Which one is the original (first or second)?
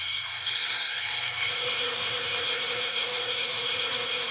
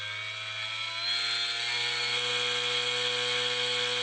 second